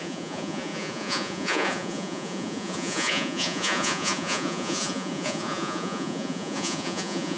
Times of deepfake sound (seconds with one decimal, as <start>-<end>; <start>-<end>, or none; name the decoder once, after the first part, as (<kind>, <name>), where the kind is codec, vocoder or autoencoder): 0.0-7.4 (vocoder, Vocos)